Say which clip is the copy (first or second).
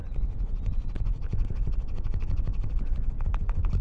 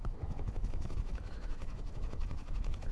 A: second